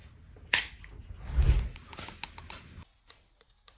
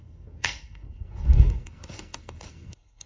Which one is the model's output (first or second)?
second